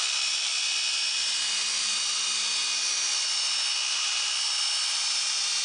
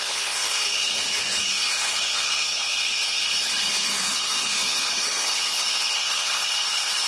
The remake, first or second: second